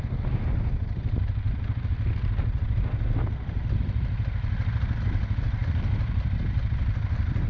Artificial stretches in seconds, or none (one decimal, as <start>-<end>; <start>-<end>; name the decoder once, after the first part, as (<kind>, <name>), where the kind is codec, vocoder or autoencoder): none